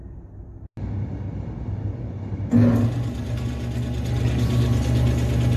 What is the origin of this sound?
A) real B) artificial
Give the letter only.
A